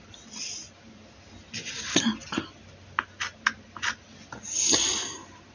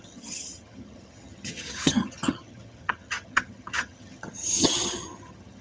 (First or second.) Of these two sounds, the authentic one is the first